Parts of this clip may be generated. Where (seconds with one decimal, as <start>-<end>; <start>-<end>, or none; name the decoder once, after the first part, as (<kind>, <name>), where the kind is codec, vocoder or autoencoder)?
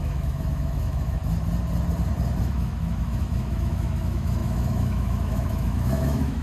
0.0-1.2 (autoencoder, DAC-VAE); 2.4-6.4